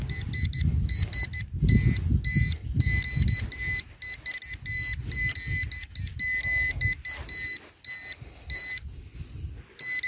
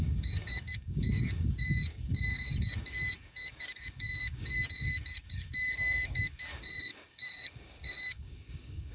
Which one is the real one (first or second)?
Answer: first